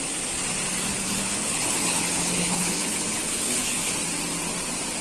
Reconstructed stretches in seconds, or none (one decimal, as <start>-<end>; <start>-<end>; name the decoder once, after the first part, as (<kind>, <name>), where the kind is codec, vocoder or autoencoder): 0.9-3.9 (codec, HILCodec)